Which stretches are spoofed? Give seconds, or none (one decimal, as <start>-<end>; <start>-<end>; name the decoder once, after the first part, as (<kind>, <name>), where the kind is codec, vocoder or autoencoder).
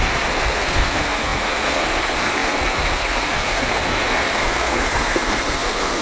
0.0-6.0 (codec, SNAC)